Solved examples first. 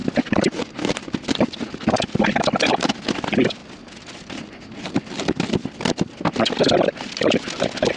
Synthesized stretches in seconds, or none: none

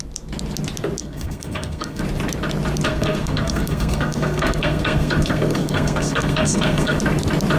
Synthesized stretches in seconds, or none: 1.0-2.0 (codec, SNAC); 2.9-7.0

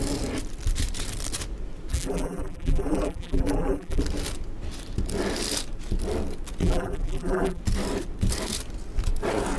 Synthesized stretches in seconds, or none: 1.9-4.0 (vocoder, BigVGAN v2); 6.6-7.6